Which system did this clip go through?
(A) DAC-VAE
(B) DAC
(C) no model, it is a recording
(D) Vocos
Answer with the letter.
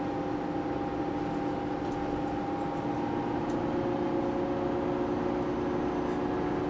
C